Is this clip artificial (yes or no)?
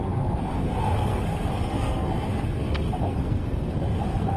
yes